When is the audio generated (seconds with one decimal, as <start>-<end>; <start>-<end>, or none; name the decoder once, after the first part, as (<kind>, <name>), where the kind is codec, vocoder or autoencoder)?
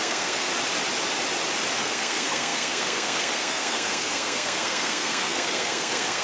0.0-0.5 (codec, SNAC); 1.8-6.2